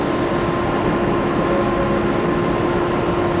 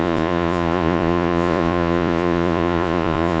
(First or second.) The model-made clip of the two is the second